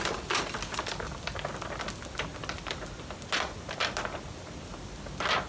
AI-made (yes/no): no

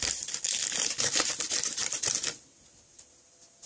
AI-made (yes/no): no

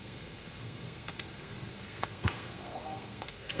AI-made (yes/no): yes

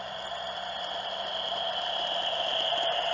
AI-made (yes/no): no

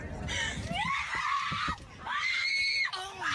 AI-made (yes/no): no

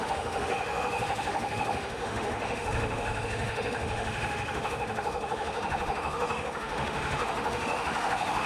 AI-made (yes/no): yes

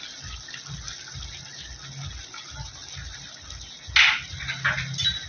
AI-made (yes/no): no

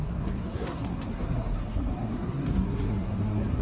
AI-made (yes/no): yes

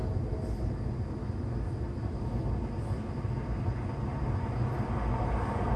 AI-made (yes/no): no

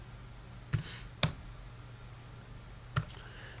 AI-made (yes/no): no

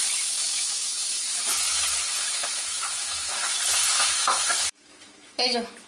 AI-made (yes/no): yes